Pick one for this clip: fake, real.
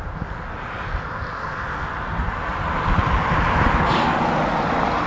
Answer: real